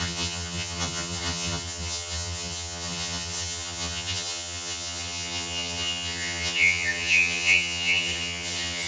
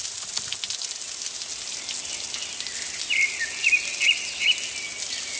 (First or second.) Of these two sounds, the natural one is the second